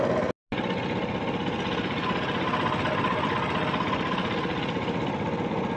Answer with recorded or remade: recorded